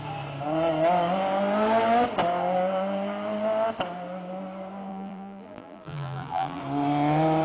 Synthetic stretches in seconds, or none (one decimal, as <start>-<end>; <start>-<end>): 4.9-6.6